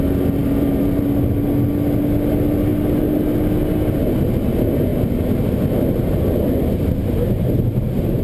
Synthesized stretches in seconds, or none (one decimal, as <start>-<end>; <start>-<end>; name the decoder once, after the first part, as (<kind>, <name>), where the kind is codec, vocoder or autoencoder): 0.4-1.0 (vocoder, BigVGAN v2); 7.0-8.2